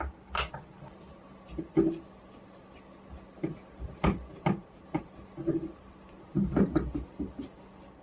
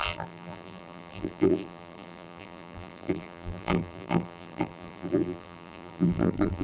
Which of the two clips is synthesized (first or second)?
second